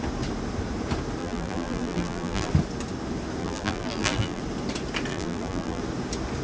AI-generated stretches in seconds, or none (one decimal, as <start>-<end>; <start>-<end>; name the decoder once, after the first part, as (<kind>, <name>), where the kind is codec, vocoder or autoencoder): 1.2-2.5 (vocoder, BigVGAN v2); 3.4-4.4; 5.1-5.8